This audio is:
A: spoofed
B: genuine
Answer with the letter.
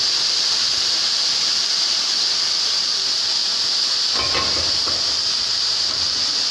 B